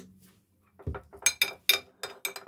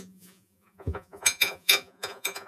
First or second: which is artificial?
second